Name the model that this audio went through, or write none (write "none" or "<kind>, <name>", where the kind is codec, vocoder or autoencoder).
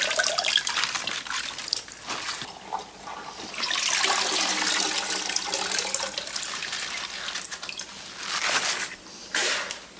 none